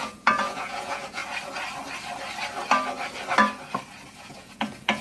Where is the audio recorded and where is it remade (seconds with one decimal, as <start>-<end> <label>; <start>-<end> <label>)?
0.0-1.2 remade; 1.2-4.2 recorded; 4.2-5.0 remade